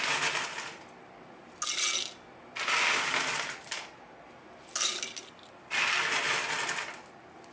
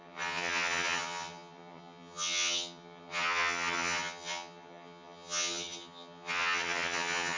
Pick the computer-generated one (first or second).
second